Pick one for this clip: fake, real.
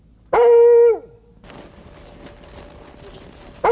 real